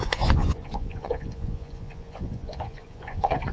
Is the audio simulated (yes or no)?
yes